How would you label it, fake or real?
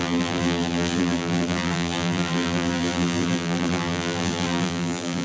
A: fake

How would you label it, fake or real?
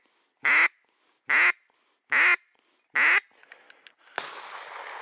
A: real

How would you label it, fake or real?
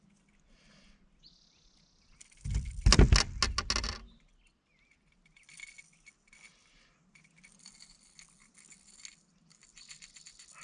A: real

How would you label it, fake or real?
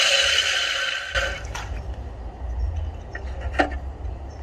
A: real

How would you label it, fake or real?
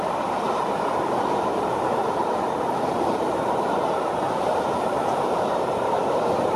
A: fake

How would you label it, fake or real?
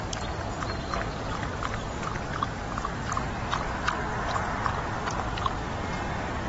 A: real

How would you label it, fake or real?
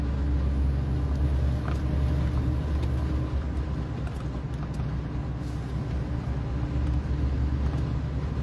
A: real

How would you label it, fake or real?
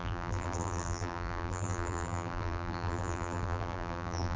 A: fake